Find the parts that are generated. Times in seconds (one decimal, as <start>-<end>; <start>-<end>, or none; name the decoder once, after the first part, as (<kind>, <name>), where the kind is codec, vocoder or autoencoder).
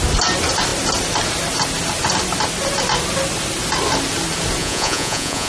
4.6-5.5 (vocoder, Vocos)